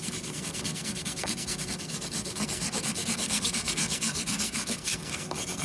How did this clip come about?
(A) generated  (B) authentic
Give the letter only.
A